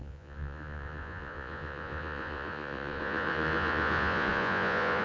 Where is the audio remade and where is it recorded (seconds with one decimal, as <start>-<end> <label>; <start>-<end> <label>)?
0.0-5.0 remade